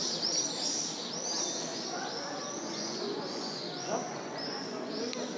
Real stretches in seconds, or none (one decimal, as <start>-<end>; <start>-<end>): 0.0-1.7; 4.9-5.4